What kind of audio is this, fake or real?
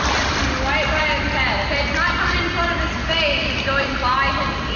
real